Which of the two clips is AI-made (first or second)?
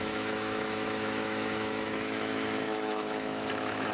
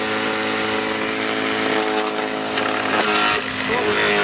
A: first